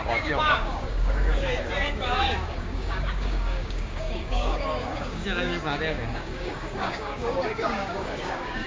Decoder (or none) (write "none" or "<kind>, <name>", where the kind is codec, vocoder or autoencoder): codec, DAC